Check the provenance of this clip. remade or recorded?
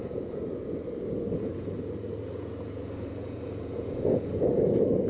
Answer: remade